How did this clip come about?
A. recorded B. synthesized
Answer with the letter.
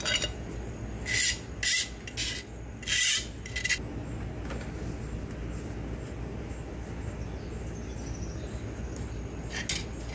A